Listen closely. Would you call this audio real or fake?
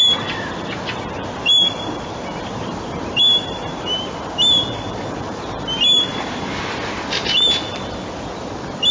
real